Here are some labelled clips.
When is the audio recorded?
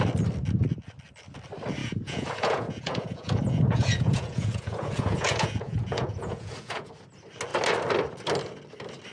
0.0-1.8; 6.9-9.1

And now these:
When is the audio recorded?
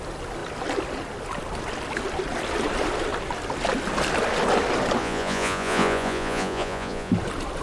0.0-5.0; 7.1-7.6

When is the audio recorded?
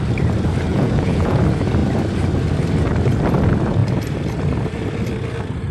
0.0-0.7; 1.4-5.7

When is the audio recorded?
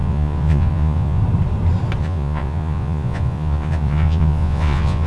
1.2-2.0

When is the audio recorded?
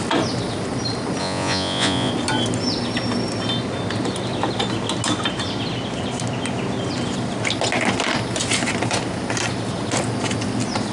0.0-1.2; 2.1-10.9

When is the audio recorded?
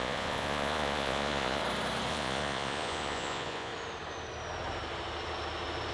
1.6-2.1; 3.7-5.9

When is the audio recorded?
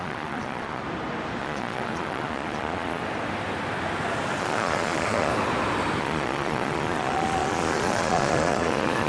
0.8-1.4; 3.0-4.4; 5.3-6.0